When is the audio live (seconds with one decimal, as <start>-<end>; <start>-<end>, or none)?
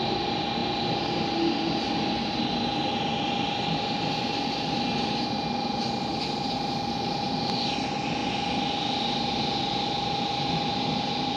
0.0-6.1; 7.3-11.4